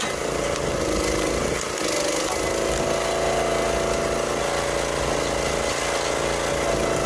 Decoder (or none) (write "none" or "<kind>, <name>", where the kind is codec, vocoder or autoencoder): none